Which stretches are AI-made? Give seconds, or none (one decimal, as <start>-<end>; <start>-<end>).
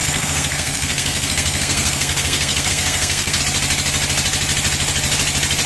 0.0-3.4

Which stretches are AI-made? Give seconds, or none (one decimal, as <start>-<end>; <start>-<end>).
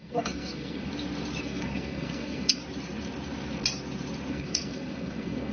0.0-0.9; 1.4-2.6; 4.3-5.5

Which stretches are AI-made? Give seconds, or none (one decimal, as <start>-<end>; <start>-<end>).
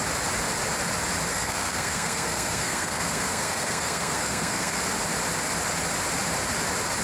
1.3-4.8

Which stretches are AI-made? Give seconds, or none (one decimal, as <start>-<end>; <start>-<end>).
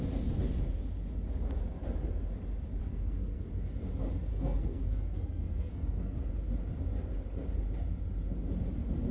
2.8-3.5; 4.3-6.3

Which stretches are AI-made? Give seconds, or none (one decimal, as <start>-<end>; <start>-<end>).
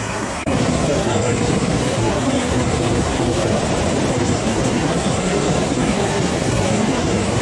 0.0-3.6; 4.1-7.4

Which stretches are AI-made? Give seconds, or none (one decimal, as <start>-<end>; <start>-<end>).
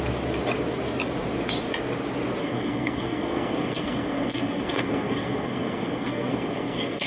2.4-7.1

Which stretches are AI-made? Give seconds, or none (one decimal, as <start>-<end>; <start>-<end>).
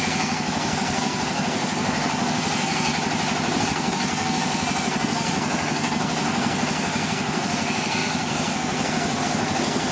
0.0-2.9; 3.6-9.9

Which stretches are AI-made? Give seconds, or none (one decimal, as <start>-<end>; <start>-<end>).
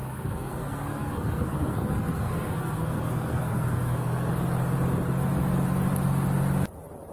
0.0-4.3